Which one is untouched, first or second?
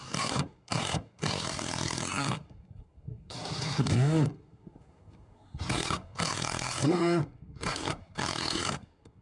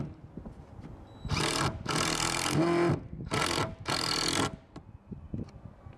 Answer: second